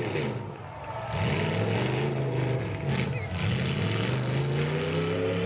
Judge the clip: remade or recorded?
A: recorded